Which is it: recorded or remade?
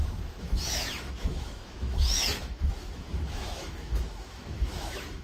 remade